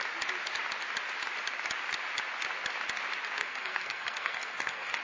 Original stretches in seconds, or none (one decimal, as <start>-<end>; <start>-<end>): 0.0-3.4